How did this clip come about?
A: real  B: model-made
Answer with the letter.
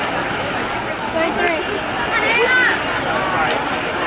A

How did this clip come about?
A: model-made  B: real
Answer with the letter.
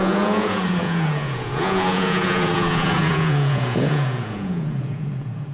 A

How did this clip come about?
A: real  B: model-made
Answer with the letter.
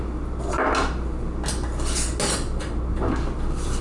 A